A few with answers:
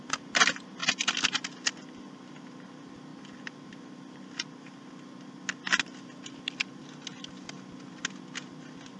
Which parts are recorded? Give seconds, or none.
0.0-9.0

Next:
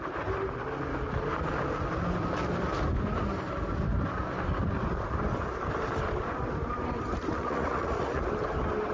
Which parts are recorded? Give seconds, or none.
0.0-7.4; 8.2-8.9

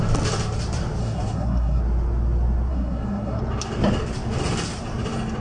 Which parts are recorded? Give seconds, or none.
0.0-1.0; 1.8-2.7; 3.4-5.4

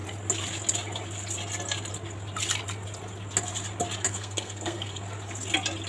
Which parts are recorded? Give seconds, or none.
0.0-4.1; 5.0-5.9